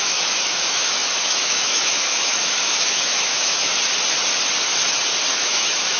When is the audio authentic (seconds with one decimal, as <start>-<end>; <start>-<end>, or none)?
3.7-5.3